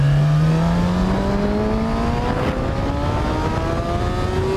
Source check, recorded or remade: recorded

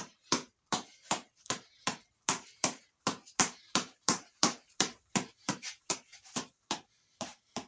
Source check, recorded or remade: remade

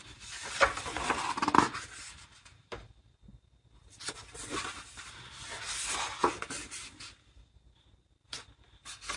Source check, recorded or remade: recorded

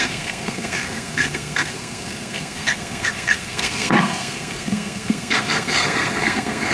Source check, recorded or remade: remade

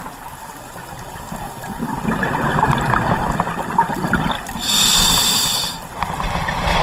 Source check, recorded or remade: recorded